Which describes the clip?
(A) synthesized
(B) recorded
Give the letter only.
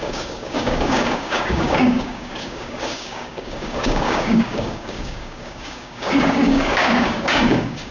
A